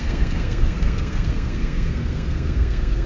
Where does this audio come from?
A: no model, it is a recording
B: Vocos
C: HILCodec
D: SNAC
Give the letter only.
D